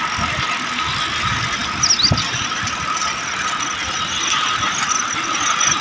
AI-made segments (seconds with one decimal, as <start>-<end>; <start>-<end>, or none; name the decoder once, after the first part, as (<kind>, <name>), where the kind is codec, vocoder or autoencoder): none